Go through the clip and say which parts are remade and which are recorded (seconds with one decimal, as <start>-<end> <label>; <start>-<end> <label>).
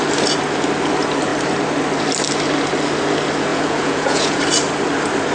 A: 0.0-3.5 recorded; 3.5-4.4 remade; 4.4-5.3 recorded